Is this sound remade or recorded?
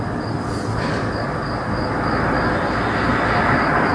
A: recorded